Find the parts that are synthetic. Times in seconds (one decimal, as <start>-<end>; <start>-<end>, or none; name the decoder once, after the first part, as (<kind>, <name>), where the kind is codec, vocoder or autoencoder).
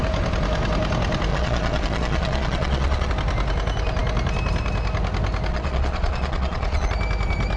1.3-3.1 (vocoder, Vocos); 5.5-6.9